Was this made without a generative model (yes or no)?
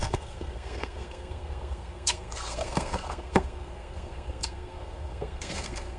no